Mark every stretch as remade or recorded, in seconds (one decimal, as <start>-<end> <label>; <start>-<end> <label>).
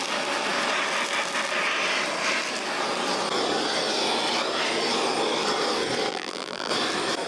0.0-6.1 recorded; 6.1-6.7 remade; 6.7-7.3 recorded